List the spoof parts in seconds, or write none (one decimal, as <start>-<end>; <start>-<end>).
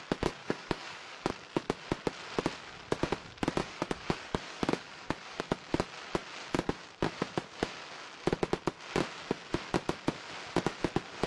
0.4-1.3; 3.6-5.4